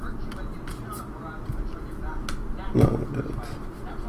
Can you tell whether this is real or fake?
real